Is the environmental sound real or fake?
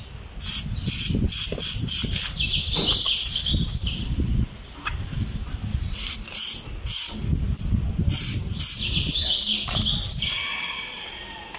real